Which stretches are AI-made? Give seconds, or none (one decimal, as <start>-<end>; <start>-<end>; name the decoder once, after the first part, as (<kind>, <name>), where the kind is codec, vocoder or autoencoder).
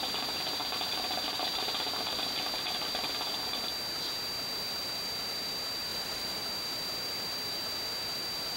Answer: 5.9-6.4 (vocoder, BigVGAN v2)